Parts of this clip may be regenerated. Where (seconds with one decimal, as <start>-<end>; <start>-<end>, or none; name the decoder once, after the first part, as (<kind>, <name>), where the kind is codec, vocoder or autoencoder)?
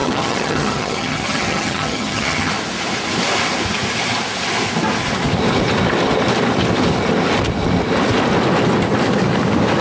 0.0-2.5 (vocoder, HiFi-GAN)